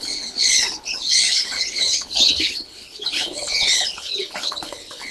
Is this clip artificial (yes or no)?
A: yes